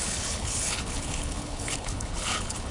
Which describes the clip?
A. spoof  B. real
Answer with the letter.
A